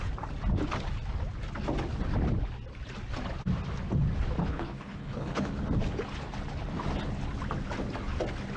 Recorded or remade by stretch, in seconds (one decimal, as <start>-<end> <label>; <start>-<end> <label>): 0.0-4.4 recorded; 4.4-5.5 remade; 5.5-8.6 recorded